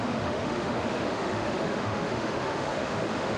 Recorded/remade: remade